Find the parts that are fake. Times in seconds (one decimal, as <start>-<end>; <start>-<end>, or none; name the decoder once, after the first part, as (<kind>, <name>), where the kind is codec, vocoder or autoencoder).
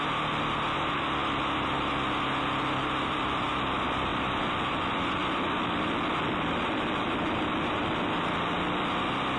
0.0-1.2 (vocoder, BigVGAN v2); 2.8-5.2; 6.3-9.4